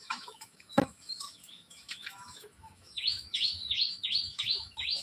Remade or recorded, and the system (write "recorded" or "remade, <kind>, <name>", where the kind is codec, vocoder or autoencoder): remade, autoencoder, DAC-VAE